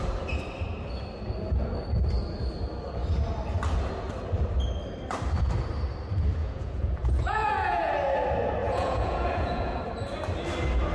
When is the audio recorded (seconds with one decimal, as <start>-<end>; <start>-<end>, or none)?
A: 0.0-6.4; 7.9-8.6; 9.8-10.9